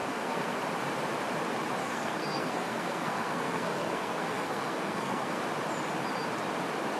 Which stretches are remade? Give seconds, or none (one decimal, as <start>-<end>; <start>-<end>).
0.0-0.6; 1.8-5.4